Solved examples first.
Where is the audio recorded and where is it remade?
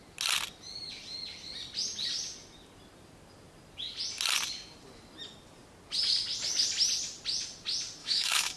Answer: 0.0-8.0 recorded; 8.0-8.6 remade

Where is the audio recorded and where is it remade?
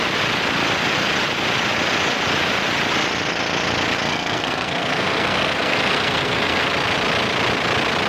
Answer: 0.0-4.1 recorded; 4.1-6.7 remade; 6.7-8.1 recorded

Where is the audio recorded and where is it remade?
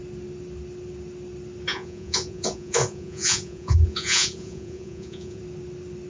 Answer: 0.0-1.7 recorded; 1.7-5.4 remade; 5.4-6.1 recorded